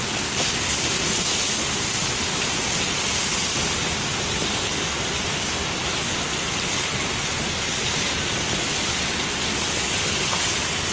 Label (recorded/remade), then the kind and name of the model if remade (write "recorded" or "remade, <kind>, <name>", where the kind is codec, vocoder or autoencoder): recorded